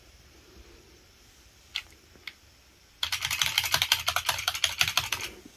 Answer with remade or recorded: remade